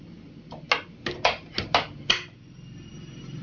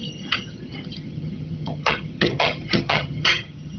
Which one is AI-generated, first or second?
second